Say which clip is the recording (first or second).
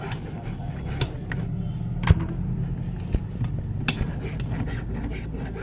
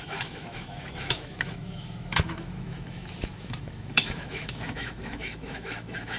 first